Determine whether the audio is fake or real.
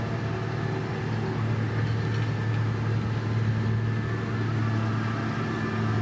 real